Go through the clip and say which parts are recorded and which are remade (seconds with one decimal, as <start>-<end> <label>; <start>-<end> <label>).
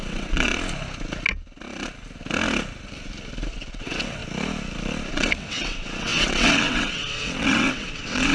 0.0-0.5 remade; 0.5-3.5 recorded; 3.5-4.2 remade; 4.2-5.1 recorded; 5.1-8.3 remade